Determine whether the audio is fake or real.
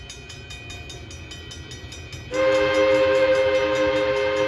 real